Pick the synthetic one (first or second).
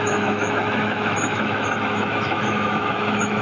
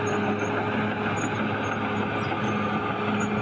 first